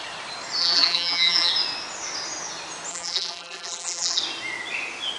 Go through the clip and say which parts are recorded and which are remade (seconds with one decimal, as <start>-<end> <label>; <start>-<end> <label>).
0.0-0.6 recorded; 0.6-1.5 remade; 1.5-2.9 recorded; 2.9-4.2 remade; 4.2-5.2 recorded